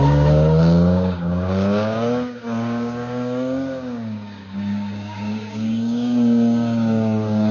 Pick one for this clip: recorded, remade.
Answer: remade